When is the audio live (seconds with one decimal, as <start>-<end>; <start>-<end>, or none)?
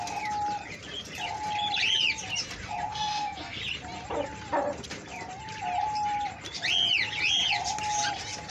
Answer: 0.0-2.9; 3.6-8.5